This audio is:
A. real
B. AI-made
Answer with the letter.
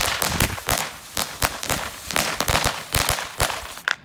A